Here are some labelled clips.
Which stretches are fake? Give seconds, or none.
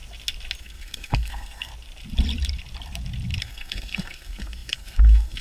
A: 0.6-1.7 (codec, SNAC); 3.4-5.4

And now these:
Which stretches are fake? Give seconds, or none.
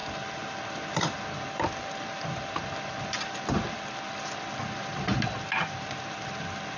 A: none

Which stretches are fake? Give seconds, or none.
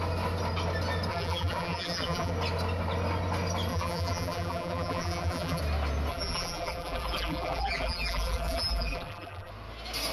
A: 1.1-2.3 (vocoder, BigVGAN v2); 3.7-5.6; 6.1-9.5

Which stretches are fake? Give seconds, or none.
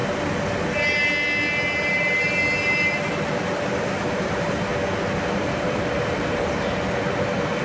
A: 3.7-4.7 (vocoder, BigVGAN v2); 5.3-7.6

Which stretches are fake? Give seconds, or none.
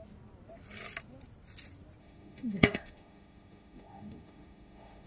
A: 2.0-5.1 (autoencoder, DAC-VAE)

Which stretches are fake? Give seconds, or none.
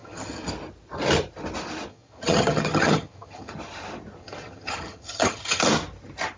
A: 0.0-0.5 (vocoder, HiFi-GAN); 1.9-3.5; 4.2-5.6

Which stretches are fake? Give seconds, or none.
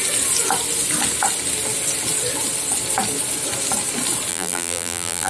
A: 4.3-5.3 (vocoder, BigVGAN v2)